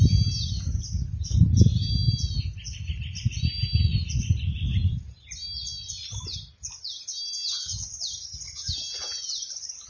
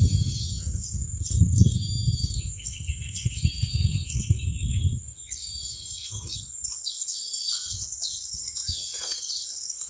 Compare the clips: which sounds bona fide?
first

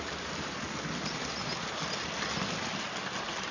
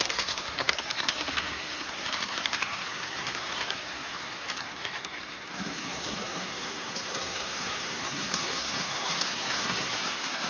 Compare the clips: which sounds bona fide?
first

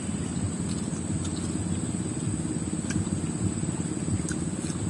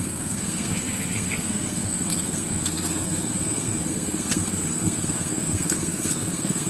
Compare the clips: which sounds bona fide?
first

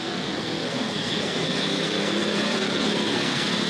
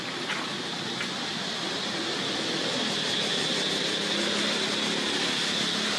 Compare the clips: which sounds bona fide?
second